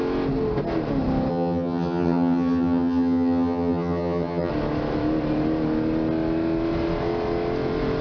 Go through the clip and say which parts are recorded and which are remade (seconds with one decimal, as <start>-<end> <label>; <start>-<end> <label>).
0.0-1.3 recorded; 1.3-4.5 remade; 4.5-8.0 recorded